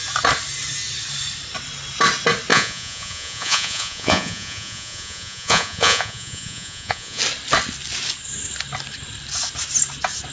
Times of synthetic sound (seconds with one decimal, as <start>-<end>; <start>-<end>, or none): 2.5-7.2

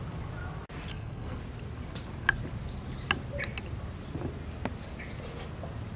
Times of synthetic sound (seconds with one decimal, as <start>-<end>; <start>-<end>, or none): 0.9-1.4

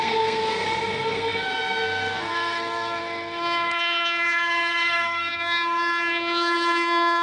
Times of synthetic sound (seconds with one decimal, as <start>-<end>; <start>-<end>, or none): 0.0-7.2